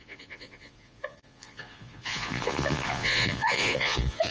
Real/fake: fake